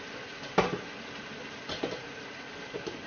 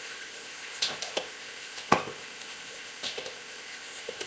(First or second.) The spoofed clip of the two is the second